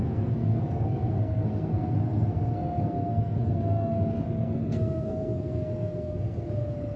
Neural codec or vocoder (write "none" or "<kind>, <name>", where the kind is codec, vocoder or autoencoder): codec, SNAC